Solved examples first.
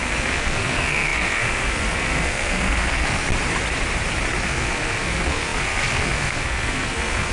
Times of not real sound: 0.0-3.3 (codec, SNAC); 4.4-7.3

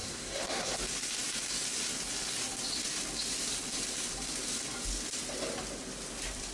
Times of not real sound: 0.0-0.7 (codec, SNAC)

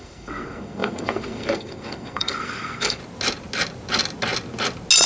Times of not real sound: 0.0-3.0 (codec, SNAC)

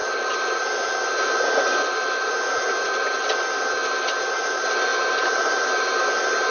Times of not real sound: none

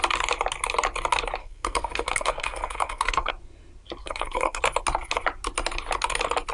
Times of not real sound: 1.4-3.3 (codec, SNAC); 4.0-4.6

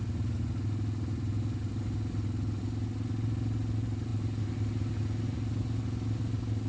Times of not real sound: none